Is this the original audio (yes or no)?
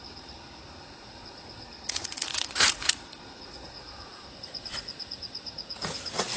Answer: no